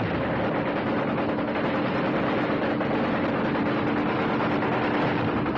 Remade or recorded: recorded